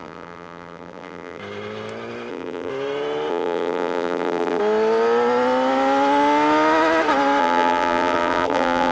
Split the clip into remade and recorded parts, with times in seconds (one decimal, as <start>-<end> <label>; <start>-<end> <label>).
0.0-1.4 remade; 1.4-2.3 recorded; 2.3-2.7 remade; 2.7-3.3 recorded; 3.3-4.6 remade; 4.6-7.4 recorded; 7.4-8.9 remade